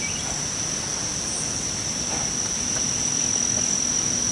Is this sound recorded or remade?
recorded